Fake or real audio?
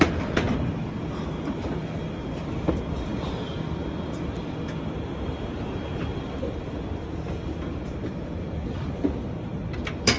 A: real